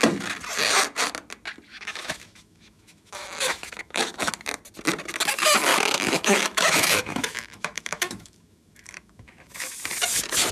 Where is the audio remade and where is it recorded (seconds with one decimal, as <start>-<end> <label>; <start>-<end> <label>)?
0.0-1.7 recorded; 1.7-4.3 remade; 4.3-5.7 recorded; 5.7-9.7 remade; 9.7-10.5 recorded